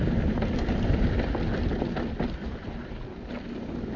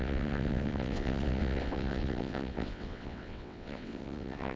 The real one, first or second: first